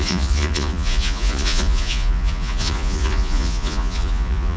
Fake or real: fake